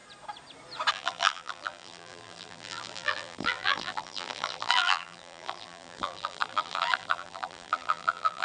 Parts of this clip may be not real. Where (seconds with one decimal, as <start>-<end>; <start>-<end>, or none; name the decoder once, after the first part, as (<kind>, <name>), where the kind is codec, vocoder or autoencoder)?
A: 0.9-8.4 (vocoder, BigVGAN v2)